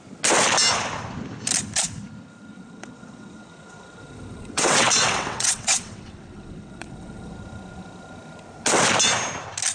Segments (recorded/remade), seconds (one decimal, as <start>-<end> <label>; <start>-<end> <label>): 0.0-2.5 recorded; 2.5-7.3 remade; 7.3-9.7 recorded